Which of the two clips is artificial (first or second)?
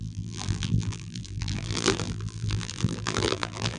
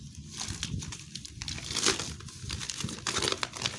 first